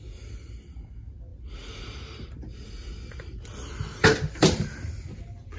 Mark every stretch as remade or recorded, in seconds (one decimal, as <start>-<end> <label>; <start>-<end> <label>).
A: 0.0-1.3 recorded; 1.3-3.7 remade; 3.7-5.6 recorded